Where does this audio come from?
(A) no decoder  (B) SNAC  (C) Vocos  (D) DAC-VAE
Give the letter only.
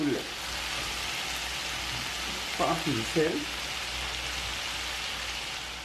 A